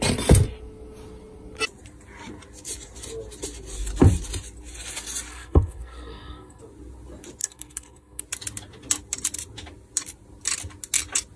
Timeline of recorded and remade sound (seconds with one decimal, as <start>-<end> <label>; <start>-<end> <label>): 0.0-5.3 recorded; 5.3-6.6 remade; 6.6-7.4 recorded; 7.4-8.2 remade; 8.2-11.4 recorded